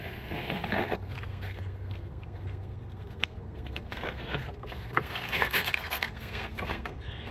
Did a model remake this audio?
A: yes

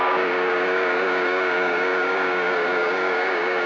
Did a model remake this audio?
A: yes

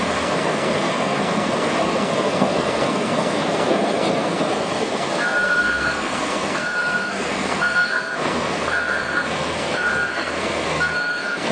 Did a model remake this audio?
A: yes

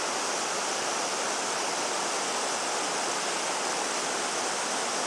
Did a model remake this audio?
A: no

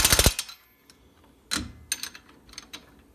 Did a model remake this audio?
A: no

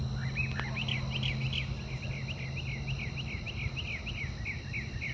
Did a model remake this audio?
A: no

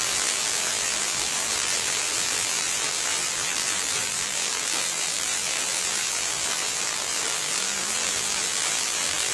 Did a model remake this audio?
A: yes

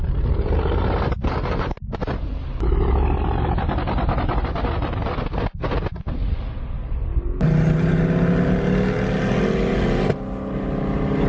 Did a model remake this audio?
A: no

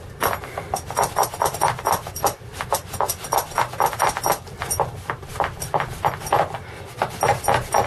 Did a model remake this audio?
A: no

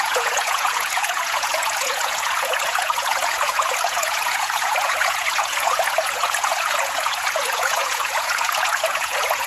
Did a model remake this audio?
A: yes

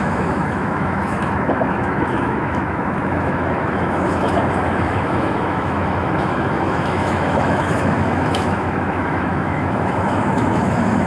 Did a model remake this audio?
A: yes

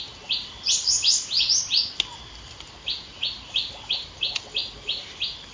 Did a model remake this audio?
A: no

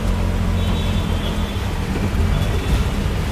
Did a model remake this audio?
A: no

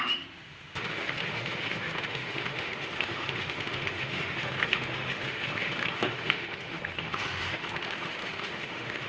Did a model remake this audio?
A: yes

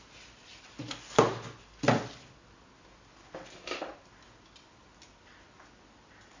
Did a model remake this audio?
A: no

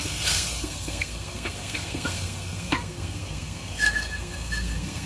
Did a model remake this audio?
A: yes